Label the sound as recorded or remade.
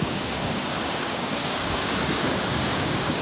remade